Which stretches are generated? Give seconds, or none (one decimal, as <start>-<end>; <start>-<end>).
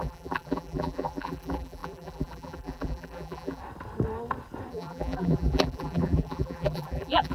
0.0-3.6; 4.7-7.3